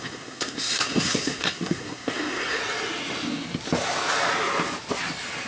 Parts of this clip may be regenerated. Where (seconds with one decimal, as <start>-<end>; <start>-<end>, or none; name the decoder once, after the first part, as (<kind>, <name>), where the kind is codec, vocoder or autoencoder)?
0.0-2.6 (codec, SNAC)